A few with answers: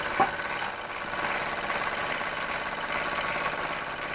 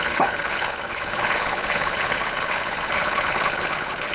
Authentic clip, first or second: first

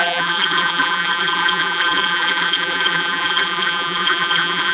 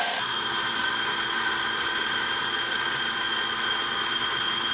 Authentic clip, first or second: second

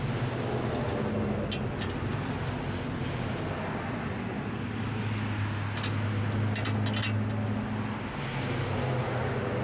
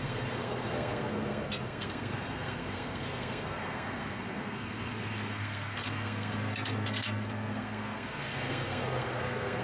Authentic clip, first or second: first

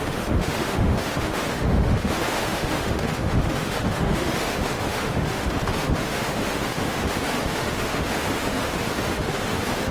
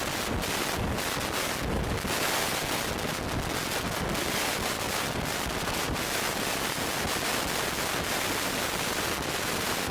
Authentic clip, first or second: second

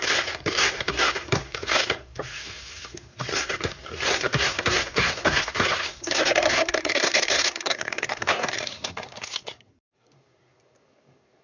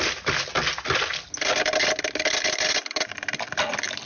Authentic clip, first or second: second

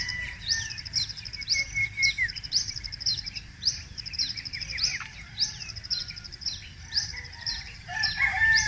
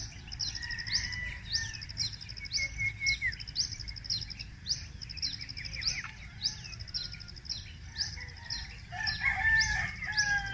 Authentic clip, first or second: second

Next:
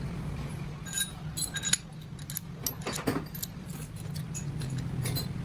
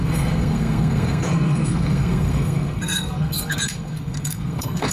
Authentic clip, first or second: first